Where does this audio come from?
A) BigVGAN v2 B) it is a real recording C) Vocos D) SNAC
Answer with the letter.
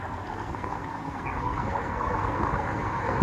D